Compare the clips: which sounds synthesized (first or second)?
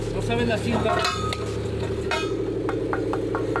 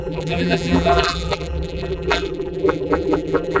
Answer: second